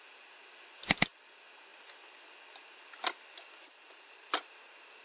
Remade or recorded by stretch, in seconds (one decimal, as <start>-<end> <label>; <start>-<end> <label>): 0.0-5.0 recorded